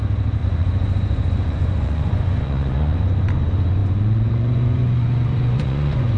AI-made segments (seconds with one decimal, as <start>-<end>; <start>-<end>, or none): 0.4-3.0; 3.8-6.2